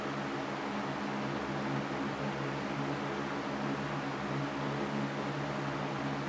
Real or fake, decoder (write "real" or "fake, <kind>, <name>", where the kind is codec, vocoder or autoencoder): real